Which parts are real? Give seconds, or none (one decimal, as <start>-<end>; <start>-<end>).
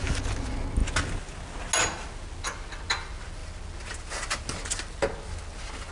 0.0-5.9